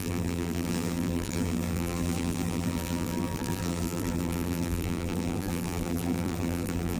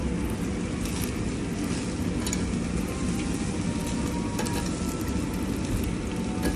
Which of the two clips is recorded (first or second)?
second